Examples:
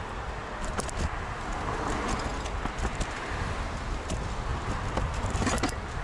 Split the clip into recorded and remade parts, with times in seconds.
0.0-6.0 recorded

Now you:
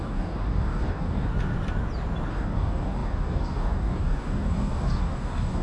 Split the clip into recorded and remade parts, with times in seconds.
0.0-1.3 remade; 1.3-2.3 recorded; 2.3-5.6 remade